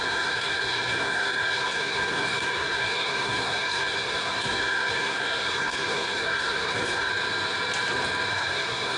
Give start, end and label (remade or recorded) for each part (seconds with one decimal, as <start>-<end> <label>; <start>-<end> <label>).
0.0-7.1 remade; 7.1-8.3 recorded; 8.3-9.0 remade